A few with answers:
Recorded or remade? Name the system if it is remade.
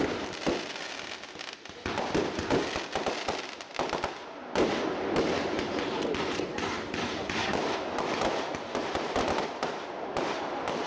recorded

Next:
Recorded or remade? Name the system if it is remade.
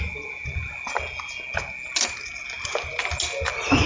recorded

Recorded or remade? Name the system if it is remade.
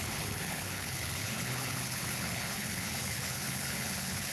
remade, codec, HILCodec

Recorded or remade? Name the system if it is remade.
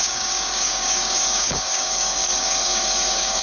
remade, codec, DAC